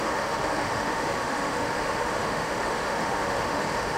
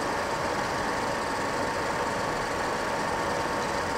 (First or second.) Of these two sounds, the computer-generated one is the first